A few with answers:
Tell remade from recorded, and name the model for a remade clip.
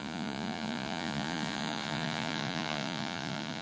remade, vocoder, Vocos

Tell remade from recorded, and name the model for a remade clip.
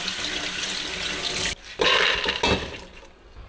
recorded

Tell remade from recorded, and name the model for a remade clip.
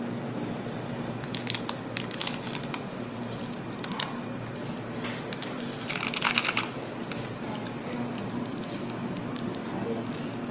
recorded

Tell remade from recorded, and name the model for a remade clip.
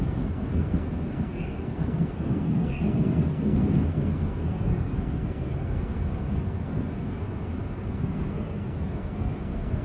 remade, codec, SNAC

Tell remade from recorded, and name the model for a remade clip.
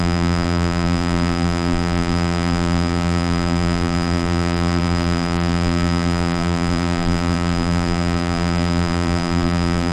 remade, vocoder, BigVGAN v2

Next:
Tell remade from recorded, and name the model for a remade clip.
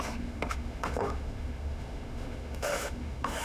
remade, autoencoder, DAC-VAE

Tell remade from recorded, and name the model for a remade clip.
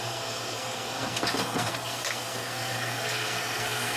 remade, codec, SNAC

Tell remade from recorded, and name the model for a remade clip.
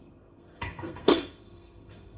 remade, codec, SNAC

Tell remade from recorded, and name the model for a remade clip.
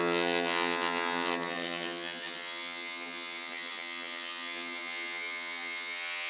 remade, vocoder, HiFi-GAN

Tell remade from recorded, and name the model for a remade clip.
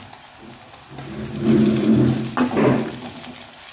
recorded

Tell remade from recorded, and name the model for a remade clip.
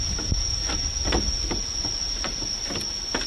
recorded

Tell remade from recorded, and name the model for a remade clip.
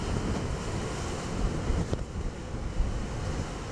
recorded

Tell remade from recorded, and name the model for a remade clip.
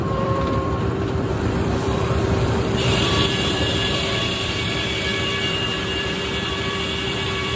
remade, vocoder, BigVGAN v2